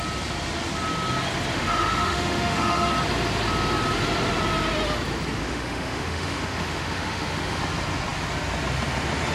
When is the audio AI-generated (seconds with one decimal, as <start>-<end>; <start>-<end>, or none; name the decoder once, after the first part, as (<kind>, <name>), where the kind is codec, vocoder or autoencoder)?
1.5-2.9 (autoencoder, DAC-VAE); 5.4-7.6